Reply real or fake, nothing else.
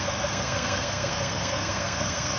fake